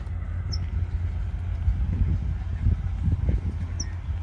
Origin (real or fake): real